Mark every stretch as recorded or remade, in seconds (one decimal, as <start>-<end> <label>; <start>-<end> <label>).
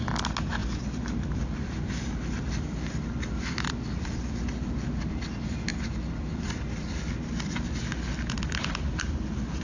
0.0-0.6 recorded; 0.6-5.1 remade; 5.1-5.7 recorded; 5.7-7.9 remade; 7.9-9.6 recorded